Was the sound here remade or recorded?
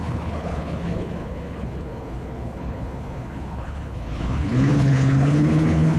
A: remade